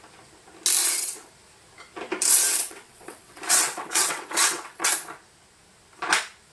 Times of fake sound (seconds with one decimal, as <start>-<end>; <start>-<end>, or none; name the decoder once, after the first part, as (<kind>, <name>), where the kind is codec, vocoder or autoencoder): 0.8-1.3 (vocoder, WaveNeXt); 2.3-4.9